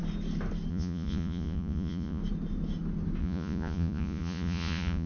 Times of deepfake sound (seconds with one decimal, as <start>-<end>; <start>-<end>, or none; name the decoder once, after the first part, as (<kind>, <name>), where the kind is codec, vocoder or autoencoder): 0.7-2.2 (vocoder, Vocos); 3.2-5.1